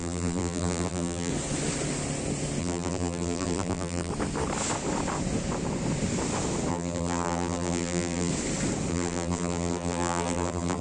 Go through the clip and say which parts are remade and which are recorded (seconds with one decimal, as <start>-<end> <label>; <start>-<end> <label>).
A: 0.0-1.3 remade; 1.3-2.6 recorded; 2.6-4.1 remade; 4.1-6.7 recorded; 6.7-8.3 remade; 8.3-8.9 recorded; 8.9-10.8 remade